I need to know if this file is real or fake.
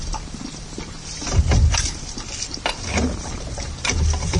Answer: fake